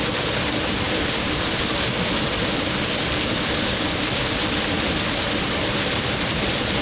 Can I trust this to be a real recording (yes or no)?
yes